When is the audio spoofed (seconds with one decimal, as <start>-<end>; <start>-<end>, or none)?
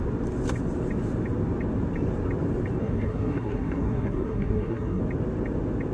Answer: 2.8-5.0